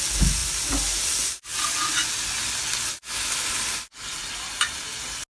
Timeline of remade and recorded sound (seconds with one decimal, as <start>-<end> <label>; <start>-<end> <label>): 0.0-5.4 recorded